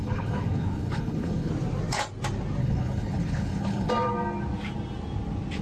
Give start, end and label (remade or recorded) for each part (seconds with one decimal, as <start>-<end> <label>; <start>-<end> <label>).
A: 0.0-1.5 remade; 1.5-2.6 recorded; 2.6-3.9 remade; 3.9-5.6 recorded